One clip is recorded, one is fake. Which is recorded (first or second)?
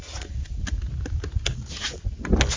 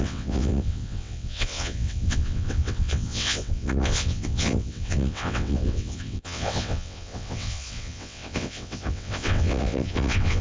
first